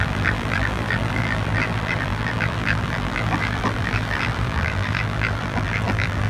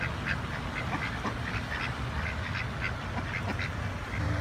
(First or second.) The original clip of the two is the second